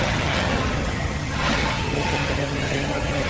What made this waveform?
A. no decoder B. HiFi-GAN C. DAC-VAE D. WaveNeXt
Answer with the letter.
B